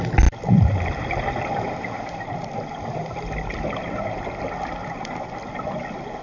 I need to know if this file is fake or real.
real